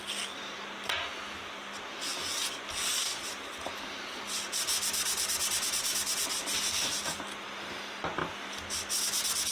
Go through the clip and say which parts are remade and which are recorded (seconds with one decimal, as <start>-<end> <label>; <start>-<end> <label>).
0.0-9.5 recorded